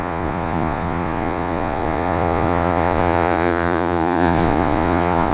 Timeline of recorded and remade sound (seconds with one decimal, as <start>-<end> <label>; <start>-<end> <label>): 0.0-5.3 remade